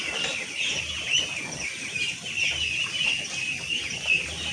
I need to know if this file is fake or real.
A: real